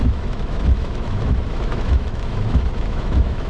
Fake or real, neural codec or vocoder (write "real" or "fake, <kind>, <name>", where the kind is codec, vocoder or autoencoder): fake, autoencoder, DAC-VAE